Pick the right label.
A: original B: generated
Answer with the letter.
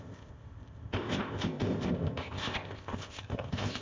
B